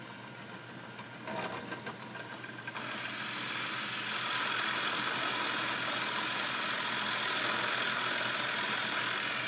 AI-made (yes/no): no